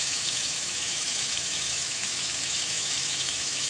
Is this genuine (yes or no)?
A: no